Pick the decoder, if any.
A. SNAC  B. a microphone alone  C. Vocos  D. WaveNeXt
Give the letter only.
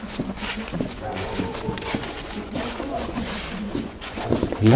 C